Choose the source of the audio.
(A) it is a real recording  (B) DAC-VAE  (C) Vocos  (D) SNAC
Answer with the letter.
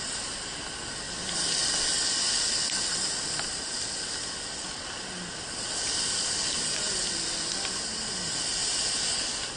A